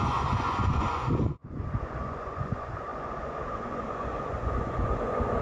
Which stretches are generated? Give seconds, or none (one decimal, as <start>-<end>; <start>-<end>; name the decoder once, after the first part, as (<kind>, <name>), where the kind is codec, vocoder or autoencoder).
0.0-5.4 (vocoder, Vocos)